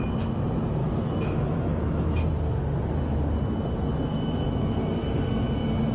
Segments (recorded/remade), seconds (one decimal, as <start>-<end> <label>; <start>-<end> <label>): 0.0-0.8 recorded; 0.8-2.2 remade; 2.2-3.9 recorded; 3.9-4.8 remade; 4.8-5.9 recorded